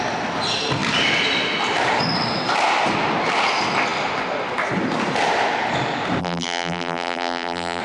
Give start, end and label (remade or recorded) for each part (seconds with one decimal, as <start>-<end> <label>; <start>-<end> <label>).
0.0-6.2 recorded; 6.2-7.8 remade